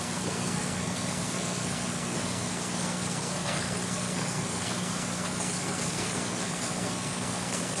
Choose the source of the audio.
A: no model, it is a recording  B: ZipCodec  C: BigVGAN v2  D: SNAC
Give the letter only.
D